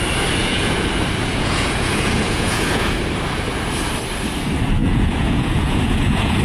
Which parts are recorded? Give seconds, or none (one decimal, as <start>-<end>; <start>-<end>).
0.0-0.4; 0.9-1.3; 3.0-4.8